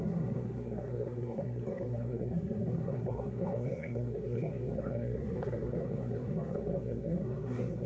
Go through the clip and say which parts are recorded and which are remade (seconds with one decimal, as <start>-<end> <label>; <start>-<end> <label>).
0.0-7.9 remade